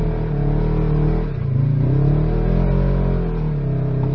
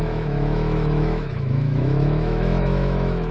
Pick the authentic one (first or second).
first